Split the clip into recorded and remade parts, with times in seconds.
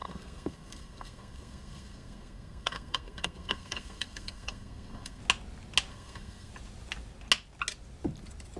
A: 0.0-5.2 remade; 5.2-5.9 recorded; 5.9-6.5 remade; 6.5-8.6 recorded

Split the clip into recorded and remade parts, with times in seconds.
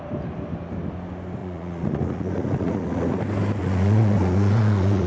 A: 0.0-1.4 recorded; 1.4-3.2 remade; 3.2-3.6 recorded; 3.6-5.1 remade